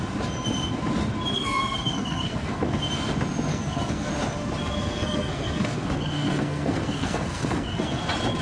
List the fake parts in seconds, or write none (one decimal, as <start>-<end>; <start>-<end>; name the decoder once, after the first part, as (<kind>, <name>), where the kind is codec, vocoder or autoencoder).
1.3-2.8 (codec, SNAC); 3.5-4.1; 4.6-8.0